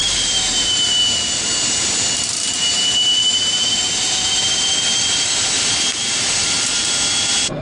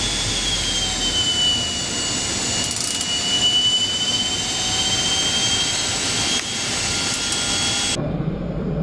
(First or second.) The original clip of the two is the second